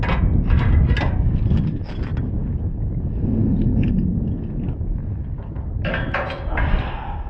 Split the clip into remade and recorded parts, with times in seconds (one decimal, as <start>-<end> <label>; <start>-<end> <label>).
0.0-7.3 recorded